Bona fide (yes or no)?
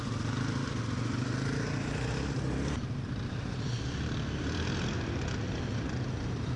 yes